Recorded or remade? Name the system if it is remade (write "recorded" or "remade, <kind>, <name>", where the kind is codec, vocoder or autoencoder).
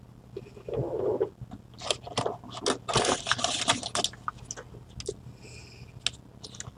recorded